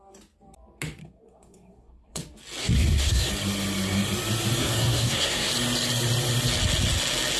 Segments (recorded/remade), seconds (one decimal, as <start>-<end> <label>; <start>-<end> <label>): 0.0-1.0 recorded; 1.0-2.2 remade; 2.2-2.6 recorded; 2.6-3.3 remade; 3.3-4.6 recorded; 4.6-5.5 remade; 5.5-7.4 recorded